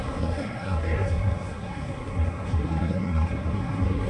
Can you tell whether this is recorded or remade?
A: remade